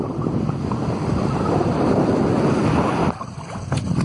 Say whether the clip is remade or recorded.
recorded